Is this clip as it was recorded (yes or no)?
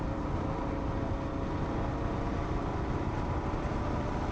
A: yes